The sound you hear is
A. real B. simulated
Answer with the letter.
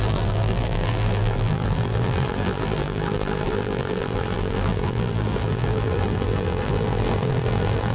B